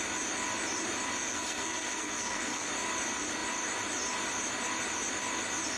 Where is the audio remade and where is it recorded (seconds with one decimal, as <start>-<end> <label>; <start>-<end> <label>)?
0.0-1.3 recorded; 1.3-2.7 remade; 2.7-5.8 recorded